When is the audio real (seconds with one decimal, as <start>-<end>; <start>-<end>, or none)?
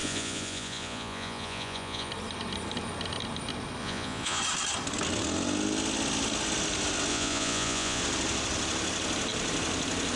2.1-3.8; 4.4-7.1; 8.0-10.2